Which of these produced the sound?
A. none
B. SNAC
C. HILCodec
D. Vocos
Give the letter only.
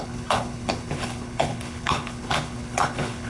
C